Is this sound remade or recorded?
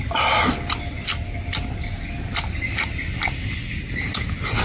recorded